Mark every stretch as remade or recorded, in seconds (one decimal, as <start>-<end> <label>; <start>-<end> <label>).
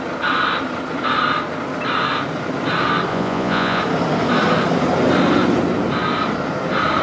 0.0-3.1 recorded; 3.1-3.8 remade; 3.8-7.0 recorded